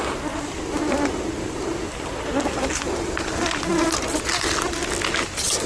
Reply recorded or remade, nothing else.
recorded